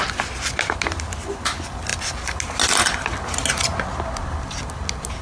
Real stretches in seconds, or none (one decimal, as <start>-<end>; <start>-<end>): 0.0-5.2